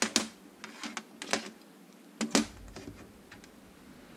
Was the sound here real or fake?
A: real